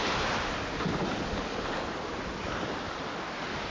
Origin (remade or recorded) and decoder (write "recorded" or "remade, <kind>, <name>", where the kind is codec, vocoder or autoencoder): recorded